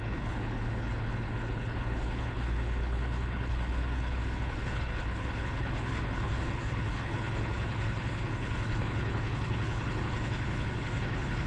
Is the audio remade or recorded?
remade